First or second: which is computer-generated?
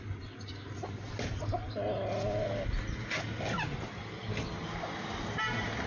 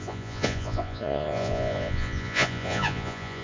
second